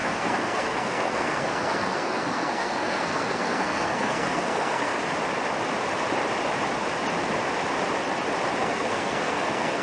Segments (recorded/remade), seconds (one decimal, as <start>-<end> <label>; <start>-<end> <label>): 0.0-4.9 remade; 4.9-8.6 recorded; 8.6-9.8 remade